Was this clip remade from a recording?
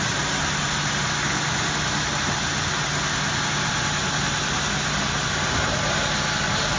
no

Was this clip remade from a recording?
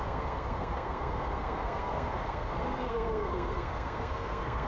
yes